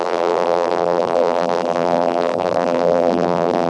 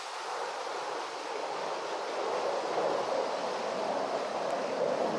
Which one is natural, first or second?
second